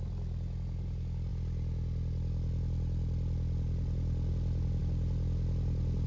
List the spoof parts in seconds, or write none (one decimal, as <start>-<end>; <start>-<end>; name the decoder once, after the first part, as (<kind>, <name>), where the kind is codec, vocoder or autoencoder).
none

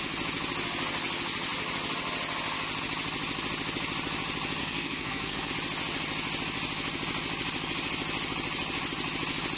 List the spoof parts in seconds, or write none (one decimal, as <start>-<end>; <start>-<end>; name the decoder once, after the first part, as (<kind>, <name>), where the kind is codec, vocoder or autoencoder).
4.6-5.5 (codec, SNAC)

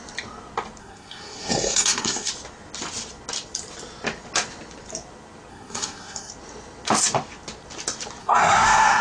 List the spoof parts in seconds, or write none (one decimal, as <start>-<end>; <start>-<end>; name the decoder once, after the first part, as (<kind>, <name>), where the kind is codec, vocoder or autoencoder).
0.8-2.3 (codec, SNAC); 5.5-6.3; 8.2-9.0

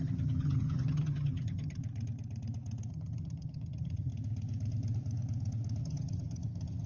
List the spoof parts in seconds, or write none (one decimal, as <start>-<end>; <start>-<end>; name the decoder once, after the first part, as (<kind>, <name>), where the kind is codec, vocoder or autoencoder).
0.0-1.8 (vocoder, HiFi-GAN); 2.9-4.1; 5.8-6.9

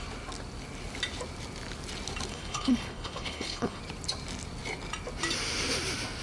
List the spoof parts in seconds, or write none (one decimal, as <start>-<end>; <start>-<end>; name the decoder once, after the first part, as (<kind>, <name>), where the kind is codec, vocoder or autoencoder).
2.3-3.8 (codec, HILCodec)

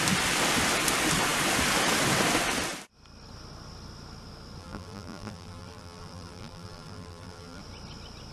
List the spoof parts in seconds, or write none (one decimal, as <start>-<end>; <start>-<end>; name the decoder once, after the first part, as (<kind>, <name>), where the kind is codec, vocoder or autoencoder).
4.6-7.6 (vocoder, BigVGAN v2)

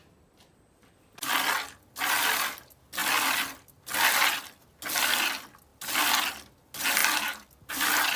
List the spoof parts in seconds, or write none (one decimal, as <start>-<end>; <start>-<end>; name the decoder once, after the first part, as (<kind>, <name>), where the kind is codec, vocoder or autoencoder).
7.0-7.7 (vocoder, BigVGAN v2)